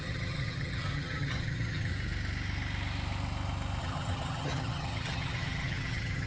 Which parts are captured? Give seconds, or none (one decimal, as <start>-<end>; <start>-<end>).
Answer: 1.9-3.8